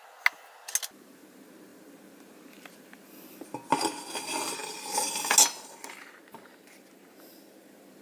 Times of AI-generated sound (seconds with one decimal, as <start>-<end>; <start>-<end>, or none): none